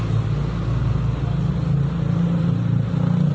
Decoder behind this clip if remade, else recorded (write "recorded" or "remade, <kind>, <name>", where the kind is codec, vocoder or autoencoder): recorded